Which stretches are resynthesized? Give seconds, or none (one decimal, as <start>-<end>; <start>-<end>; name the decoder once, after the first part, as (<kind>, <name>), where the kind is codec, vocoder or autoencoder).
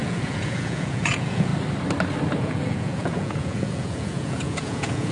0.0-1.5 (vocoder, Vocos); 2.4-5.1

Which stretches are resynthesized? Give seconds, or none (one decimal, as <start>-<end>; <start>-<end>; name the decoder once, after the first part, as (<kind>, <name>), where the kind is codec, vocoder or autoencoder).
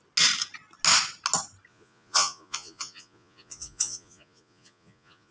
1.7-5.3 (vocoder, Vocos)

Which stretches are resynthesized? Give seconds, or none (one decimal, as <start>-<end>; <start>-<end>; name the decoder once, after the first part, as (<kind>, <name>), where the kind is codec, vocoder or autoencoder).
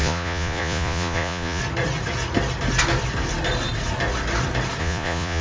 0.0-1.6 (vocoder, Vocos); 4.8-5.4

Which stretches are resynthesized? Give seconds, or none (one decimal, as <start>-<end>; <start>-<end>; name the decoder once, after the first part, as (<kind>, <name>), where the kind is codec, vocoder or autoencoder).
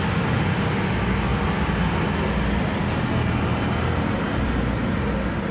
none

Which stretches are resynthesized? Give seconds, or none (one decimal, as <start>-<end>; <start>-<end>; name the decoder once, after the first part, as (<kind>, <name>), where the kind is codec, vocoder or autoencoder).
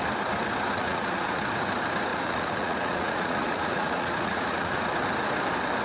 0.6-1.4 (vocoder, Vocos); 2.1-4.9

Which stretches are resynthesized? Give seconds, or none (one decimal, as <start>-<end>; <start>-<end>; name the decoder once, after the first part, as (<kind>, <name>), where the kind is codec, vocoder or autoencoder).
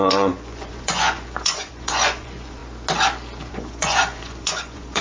0.0-2.6 (vocoder, Vocos); 3.5-5.0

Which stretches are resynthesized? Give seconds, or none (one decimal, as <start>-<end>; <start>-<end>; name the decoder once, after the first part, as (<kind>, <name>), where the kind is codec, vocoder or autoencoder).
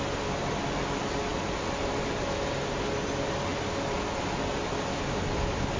none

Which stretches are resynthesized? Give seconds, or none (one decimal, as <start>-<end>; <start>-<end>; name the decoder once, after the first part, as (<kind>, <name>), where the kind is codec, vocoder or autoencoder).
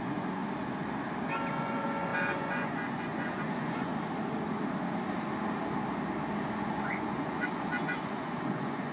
0.0-0.4 (vocoder, Vocos); 1.5-3.9; 6.5-8.9